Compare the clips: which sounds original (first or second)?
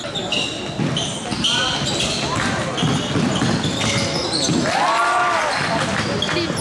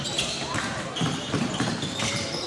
first